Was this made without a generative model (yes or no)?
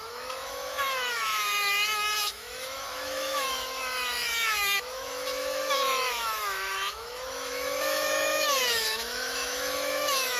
no